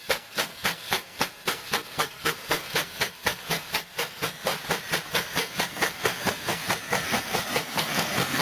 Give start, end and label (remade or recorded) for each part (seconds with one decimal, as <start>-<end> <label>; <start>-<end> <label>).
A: 0.0-4.5 remade; 4.5-5.1 recorded; 5.1-8.4 remade